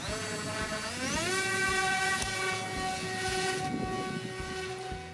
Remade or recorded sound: remade